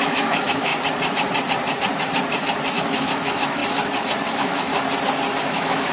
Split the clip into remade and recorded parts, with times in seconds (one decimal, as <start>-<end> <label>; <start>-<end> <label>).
0.0-0.7 remade; 0.7-2.7 recorded; 2.7-3.6 remade; 3.6-4.3 recorded; 4.3-4.7 remade; 4.7-5.4 recorded; 5.4-5.9 remade